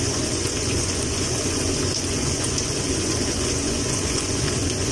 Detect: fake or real fake